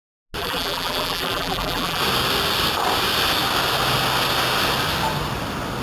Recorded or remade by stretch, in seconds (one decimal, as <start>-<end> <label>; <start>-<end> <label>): 0.0-0.4 recorded; 0.4-2.0 remade; 2.0-5.8 recorded